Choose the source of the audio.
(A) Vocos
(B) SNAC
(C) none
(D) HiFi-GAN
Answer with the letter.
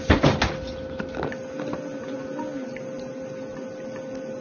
C